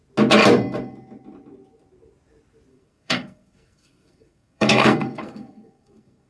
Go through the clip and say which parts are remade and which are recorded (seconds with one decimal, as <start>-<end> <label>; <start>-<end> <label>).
0.0-2.7 recorded; 2.7-6.3 remade